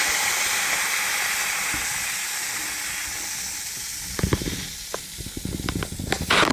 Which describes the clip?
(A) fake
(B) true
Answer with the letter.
B